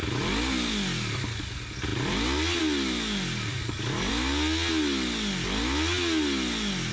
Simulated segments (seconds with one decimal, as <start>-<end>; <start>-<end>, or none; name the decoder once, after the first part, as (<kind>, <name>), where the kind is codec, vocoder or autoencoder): 3.5-4.1 (codec, DAC)